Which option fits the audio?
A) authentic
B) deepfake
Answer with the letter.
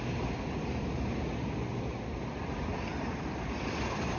A